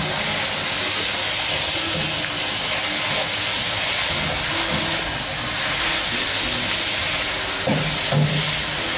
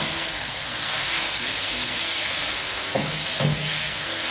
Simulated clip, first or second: second